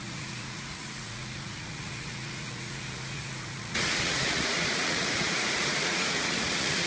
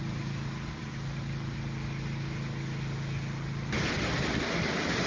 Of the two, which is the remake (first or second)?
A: first